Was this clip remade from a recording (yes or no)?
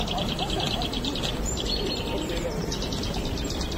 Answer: yes